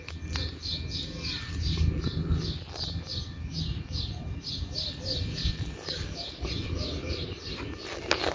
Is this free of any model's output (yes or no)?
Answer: yes